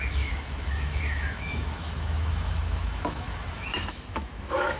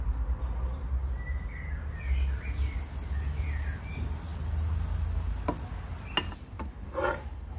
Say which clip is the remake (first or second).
first